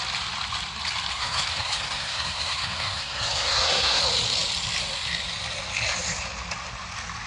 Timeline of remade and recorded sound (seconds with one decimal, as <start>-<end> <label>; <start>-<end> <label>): 0.0-1.1 recorded; 1.1-4.0 remade; 4.0-7.3 recorded